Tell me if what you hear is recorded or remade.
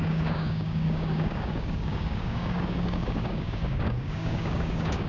remade